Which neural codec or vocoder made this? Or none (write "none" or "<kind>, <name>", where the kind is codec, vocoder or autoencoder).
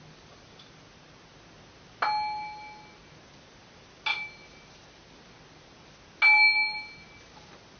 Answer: none